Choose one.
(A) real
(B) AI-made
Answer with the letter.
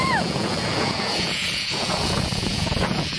B